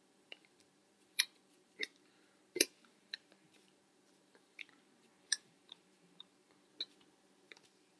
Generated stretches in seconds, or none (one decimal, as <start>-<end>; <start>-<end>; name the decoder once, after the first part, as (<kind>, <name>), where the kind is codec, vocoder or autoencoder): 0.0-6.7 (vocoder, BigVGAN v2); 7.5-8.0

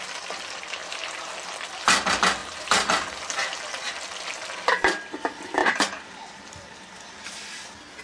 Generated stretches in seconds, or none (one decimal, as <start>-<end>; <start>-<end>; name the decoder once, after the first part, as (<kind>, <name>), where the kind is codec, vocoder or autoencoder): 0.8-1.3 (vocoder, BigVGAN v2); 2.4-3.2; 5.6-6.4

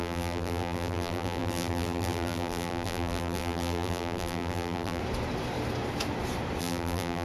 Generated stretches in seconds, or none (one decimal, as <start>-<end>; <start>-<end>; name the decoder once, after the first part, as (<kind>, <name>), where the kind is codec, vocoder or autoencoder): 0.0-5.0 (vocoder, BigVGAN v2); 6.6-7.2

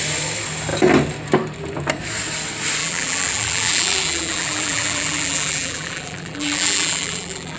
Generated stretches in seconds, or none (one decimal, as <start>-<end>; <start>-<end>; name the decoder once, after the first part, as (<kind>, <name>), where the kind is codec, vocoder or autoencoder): 2.8-7.6 (vocoder, BigVGAN v2)